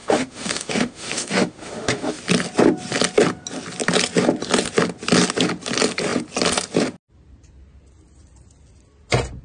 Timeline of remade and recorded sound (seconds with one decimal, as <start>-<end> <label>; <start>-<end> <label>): 0.0-2.2 remade; 2.2-9.4 recorded